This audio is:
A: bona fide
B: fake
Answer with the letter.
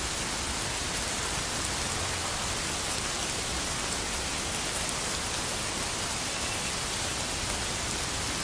A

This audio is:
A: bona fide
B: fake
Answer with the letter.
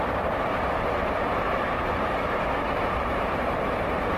B